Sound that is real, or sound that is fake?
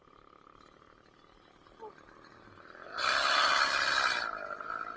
real